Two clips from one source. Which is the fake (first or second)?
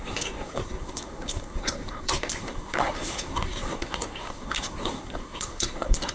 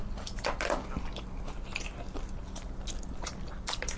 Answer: first